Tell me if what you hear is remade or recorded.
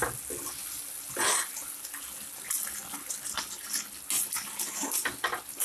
recorded